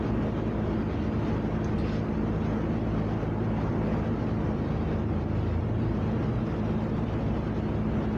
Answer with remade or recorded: recorded